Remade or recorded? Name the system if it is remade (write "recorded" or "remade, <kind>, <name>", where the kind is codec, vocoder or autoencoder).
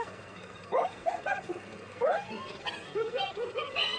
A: remade, codec, SNAC